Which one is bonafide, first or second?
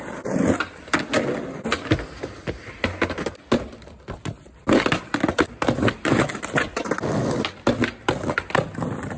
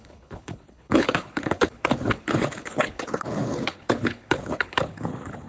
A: first